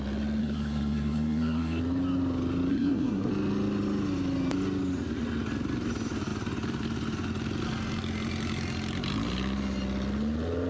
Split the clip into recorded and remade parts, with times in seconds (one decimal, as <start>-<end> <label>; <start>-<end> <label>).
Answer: 0.0-0.4 recorded; 0.4-1.8 remade; 1.8-2.7 recorded; 2.7-3.3 remade; 3.3-10.7 recorded